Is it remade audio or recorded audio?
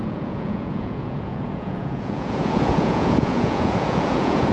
remade